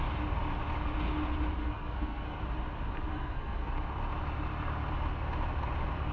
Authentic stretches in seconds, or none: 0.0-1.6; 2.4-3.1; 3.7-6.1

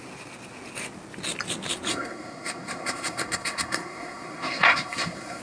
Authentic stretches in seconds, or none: 0.0-1.9

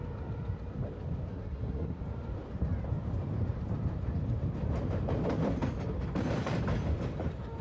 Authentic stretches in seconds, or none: 0.0-1.3; 2.0-7.6

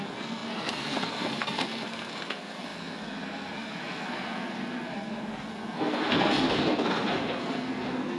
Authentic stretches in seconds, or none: none